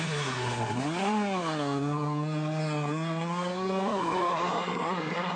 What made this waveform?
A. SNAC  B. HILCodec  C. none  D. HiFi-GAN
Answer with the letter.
A